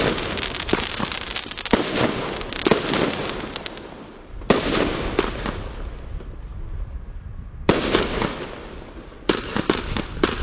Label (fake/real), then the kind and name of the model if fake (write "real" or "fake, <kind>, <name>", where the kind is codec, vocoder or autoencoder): real